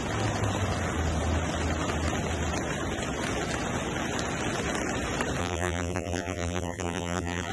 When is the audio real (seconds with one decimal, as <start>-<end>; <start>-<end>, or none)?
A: 0.0-5.4